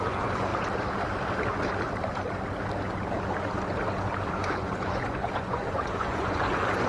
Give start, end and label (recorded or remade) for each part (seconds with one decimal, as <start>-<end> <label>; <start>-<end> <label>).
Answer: 0.0-0.5 remade; 0.5-4.3 recorded; 4.3-6.9 remade